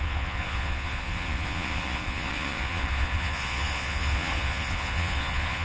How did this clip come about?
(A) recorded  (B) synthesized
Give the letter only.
B